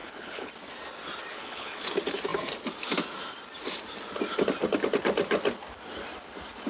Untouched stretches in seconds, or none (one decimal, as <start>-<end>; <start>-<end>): 0.5-1.3; 1.8-6.7